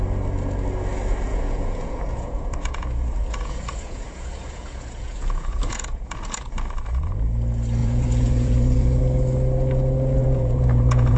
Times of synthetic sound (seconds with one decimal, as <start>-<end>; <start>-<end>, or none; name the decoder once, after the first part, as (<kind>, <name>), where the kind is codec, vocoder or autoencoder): 1.3-6.5 (vocoder, Vocos); 7.8-9.0; 10.2-11.2